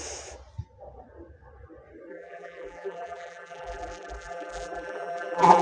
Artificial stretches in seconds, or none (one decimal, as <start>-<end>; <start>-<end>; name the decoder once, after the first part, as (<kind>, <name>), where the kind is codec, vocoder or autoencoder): 2.1-5.6 (vocoder, BigVGAN v2)